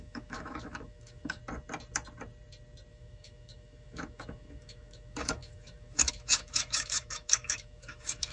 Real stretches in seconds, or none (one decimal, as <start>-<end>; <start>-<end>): 1.4-2.9